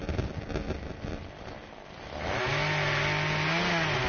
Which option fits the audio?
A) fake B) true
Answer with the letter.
B